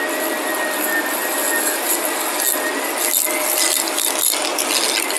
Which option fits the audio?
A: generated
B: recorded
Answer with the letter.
B